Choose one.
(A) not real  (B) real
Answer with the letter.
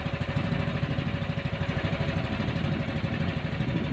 A